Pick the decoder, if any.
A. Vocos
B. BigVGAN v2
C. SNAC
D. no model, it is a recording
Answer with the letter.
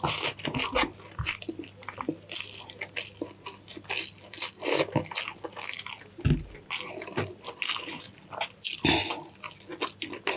D